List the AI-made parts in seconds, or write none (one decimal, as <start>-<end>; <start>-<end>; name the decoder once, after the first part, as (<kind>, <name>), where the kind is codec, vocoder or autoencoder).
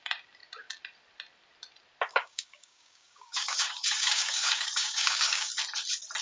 2.1-5.5 (codec, DAC)